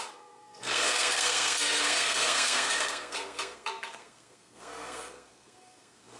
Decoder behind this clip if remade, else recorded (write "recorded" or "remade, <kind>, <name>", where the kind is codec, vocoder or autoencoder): remade, codec, SNAC